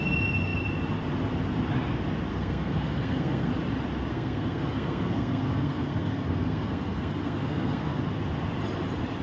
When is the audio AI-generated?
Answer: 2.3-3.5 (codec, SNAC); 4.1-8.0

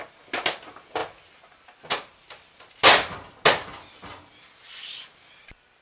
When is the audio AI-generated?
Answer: none

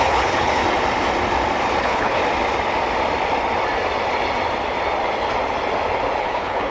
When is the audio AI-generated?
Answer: 0.0-0.6 (codec, HILCodec); 1.8-2.2; 6.2-6.7

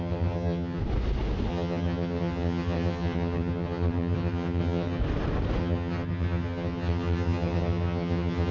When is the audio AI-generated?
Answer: 0.0-0.8 (vocoder, HiFi-GAN); 1.5-5.0; 5.6-8.5